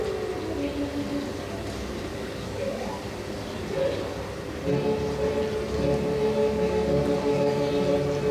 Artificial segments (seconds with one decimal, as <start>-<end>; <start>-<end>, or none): 2.1-2.9; 6.4-7.7